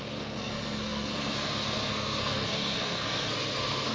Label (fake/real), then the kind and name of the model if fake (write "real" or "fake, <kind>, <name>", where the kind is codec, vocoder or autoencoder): fake, codec, SNAC